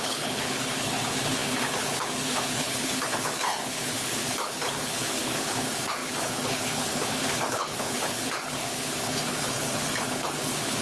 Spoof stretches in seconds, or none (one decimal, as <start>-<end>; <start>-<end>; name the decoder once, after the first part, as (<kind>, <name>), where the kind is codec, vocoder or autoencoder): 0.0-10.8 (codec, HILCodec)